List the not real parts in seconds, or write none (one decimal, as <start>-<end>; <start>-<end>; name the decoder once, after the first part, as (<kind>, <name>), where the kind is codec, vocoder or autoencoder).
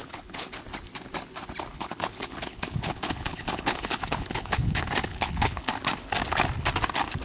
0.0-0.6 (codec, HILCodec); 1.7-5.7